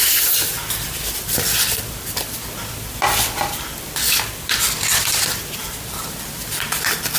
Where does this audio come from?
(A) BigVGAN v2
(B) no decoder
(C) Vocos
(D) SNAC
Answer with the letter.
A